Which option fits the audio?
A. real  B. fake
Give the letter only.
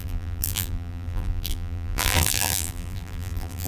B